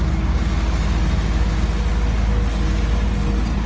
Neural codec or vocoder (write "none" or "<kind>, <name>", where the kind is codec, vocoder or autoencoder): none